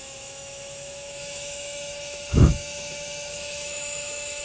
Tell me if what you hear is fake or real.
fake